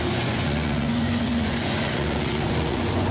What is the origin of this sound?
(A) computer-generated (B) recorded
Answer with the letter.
A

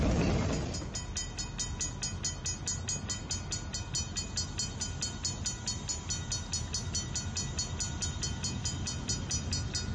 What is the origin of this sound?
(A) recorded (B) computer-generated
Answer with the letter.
A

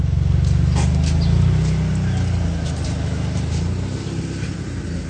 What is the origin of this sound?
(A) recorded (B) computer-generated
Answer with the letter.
A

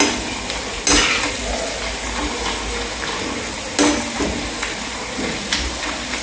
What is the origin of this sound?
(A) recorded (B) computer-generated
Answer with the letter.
A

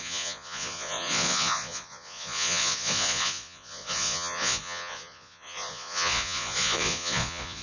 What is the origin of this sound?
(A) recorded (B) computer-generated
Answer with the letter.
B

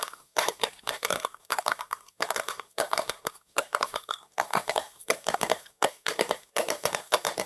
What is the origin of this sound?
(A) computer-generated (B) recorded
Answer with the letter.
A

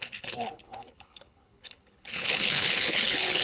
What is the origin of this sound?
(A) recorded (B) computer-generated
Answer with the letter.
B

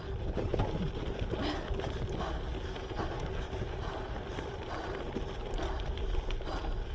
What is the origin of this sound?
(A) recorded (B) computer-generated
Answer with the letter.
A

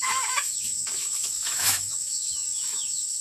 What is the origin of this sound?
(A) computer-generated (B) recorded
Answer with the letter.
A